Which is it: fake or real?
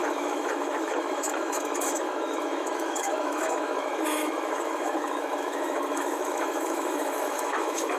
fake